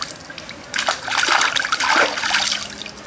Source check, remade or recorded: recorded